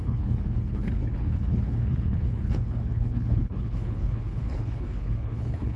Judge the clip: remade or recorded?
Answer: remade